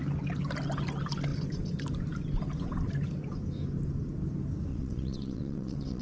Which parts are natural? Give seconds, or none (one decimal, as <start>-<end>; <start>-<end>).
0.0-4.7